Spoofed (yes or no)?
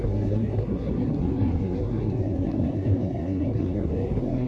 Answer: yes